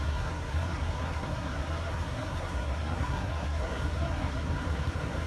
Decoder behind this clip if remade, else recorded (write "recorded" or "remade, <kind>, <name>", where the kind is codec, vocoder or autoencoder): remade, codec, SNAC